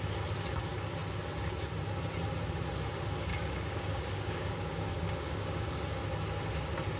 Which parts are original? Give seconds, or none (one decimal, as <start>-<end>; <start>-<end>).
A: 0.0-3.3; 6.0-7.0